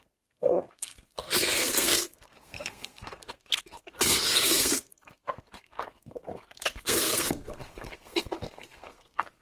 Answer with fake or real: fake